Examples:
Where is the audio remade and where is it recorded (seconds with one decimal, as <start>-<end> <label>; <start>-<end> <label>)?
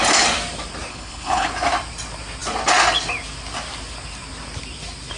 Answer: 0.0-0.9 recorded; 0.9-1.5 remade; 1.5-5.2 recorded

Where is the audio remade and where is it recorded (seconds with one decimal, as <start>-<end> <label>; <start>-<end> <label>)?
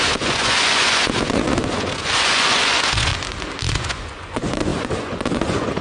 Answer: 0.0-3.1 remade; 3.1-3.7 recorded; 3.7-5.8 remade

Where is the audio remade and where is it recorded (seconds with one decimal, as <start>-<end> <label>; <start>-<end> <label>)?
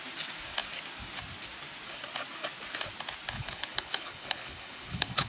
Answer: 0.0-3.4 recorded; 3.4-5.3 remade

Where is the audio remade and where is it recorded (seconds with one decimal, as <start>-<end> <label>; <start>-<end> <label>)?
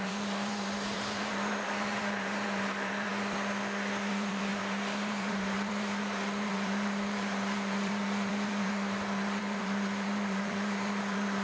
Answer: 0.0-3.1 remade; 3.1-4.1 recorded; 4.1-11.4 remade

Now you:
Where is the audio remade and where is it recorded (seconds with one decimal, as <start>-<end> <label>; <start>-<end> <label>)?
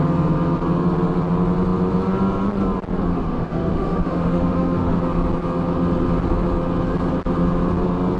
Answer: 0.0-3.1 recorded; 3.1-5.0 remade; 5.0-8.2 recorded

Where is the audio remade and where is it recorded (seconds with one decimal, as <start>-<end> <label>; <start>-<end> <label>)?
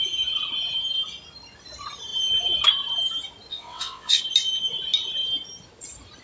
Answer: 0.0-3.5 recorded; 3.5-4.2 remade; 4.2-6.2 recorded